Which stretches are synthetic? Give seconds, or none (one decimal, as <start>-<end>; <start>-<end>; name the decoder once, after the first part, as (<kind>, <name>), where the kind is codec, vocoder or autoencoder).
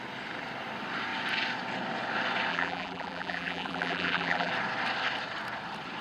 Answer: 2.5-4.5 (vocoder, BigVGAN v2)